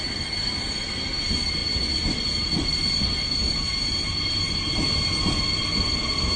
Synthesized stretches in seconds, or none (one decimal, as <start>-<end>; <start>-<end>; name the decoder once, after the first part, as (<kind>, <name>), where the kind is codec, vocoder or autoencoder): none